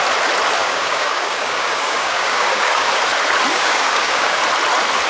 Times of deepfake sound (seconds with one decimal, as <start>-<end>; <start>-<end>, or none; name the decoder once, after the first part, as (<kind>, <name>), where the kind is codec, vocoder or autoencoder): 0.6-2.9 (codec, DAC); 3.5-4.4